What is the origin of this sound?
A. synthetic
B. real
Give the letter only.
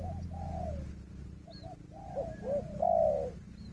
B